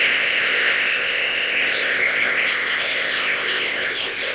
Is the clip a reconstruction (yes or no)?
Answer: yes